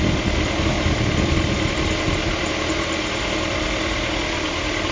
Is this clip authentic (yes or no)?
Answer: yes